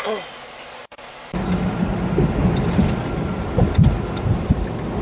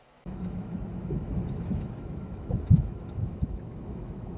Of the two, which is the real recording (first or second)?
first